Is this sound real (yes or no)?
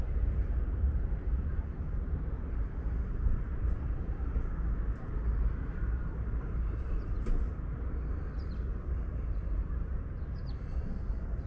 no